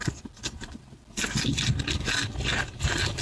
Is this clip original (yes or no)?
yes